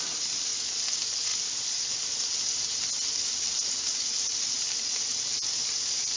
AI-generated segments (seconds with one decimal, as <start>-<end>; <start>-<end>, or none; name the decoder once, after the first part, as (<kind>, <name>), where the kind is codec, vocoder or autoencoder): none